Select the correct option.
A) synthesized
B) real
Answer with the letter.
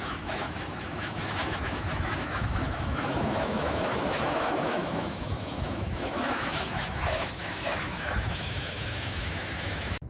A